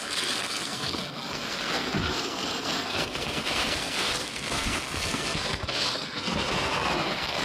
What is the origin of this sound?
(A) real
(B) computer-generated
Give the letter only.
B